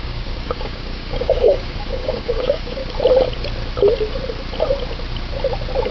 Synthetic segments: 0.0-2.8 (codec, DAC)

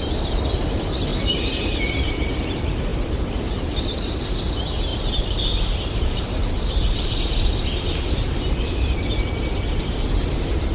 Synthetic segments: 1.1-2.3 (vocoder, BigVGAN v2); 2.9-3.4; 4.9-7.2

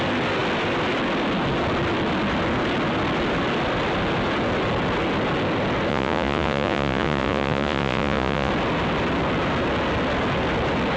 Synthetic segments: 5.9-8.5 (vocoder, Vocos)

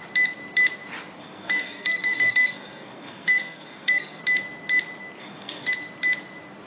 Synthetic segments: 1.2-4.2 (codec, SNAC); 5.2-5.7

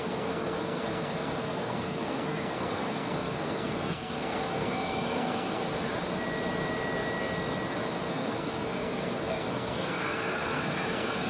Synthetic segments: 0.0-5.6 (codec, SNAC); 8.1-11.3

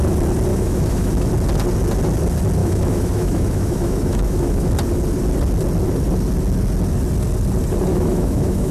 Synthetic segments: 0.5-1.3 (autoencoder, DAC-VAE); 2.6-4.7; 7.9-8.7